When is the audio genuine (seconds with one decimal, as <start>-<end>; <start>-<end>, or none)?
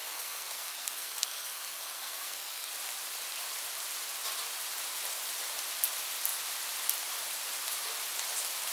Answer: 2.7-8.7